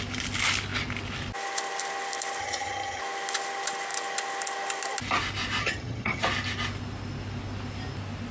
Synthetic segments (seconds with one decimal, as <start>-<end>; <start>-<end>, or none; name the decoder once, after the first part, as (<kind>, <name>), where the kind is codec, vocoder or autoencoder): 2.4-3.0 (vocoder, HiFi-GAN); 5.6-6.2